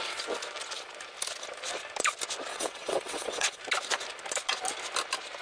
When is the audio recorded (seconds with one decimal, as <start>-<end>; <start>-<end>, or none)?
0.0-2.5; 3.6-5.4